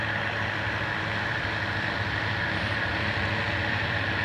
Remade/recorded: remade